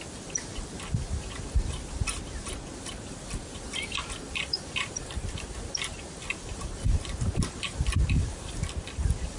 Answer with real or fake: fake